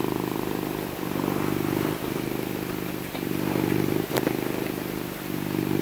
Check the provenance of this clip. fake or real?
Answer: real